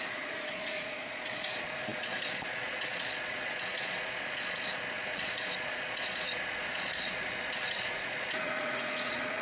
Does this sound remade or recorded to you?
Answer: remade